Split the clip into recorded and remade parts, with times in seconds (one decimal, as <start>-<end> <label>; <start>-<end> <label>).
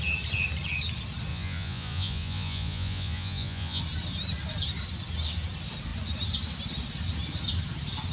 0.0-1.3 recorded; 1.3-3.8 remade; 3.8-8.1 recorded